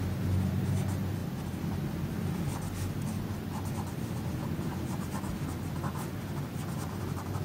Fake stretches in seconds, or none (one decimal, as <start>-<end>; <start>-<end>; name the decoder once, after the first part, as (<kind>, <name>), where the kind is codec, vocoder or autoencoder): none